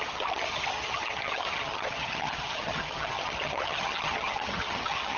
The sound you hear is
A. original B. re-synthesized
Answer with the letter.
B